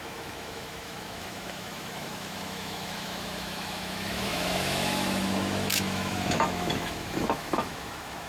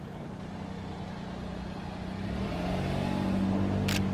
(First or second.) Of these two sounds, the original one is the second